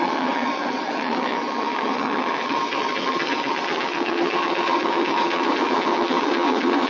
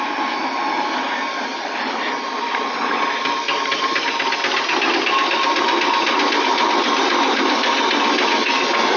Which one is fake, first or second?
first